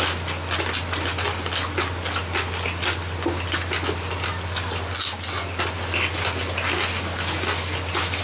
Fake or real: real